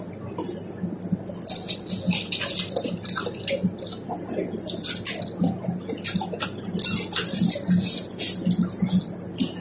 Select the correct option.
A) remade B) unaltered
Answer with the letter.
B